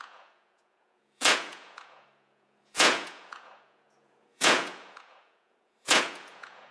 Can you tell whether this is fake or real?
fake